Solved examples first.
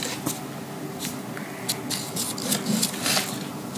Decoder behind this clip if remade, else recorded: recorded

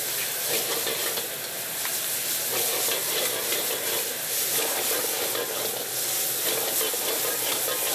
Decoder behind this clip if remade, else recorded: recorded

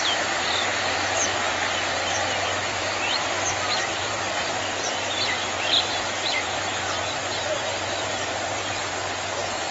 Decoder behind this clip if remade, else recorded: remade, vocoder, BigVGAN v2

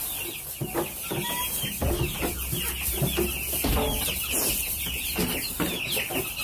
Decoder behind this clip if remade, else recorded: recorded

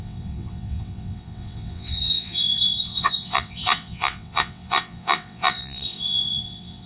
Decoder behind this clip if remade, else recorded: remade, vocoder, WaveNeXt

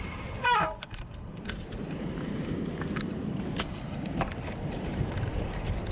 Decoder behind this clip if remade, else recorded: remade, vocoder, BigVGAN v2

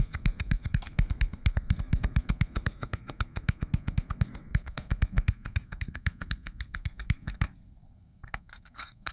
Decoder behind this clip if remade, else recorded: remade, codec, SNAC